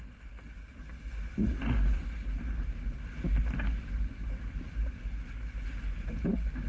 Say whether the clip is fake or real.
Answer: real